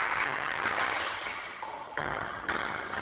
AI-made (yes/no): yes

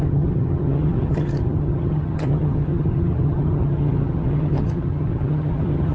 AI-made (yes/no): yes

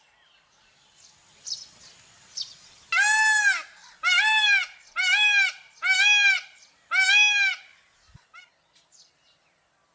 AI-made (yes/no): no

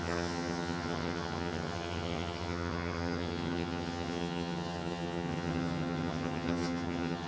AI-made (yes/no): yes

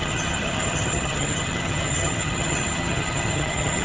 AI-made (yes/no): yes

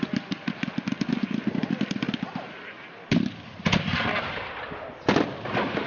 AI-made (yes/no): no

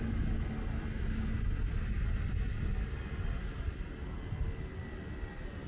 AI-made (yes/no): no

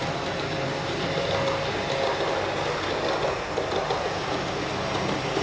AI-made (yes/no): no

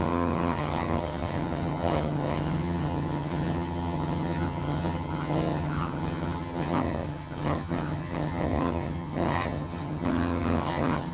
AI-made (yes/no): yes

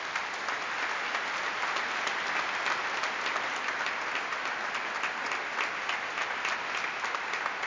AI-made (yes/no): no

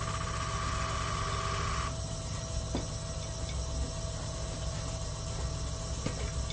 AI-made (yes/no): no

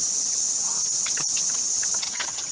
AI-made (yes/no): yes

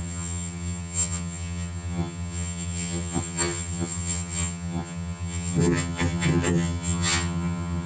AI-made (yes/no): yes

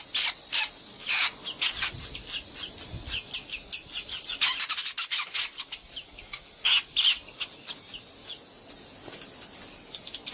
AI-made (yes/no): no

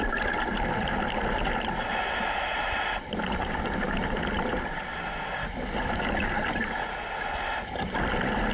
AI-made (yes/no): no